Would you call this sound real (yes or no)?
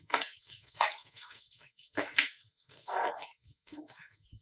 no